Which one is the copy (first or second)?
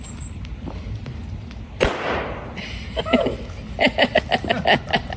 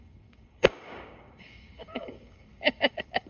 second